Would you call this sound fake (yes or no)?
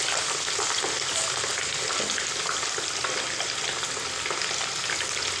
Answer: no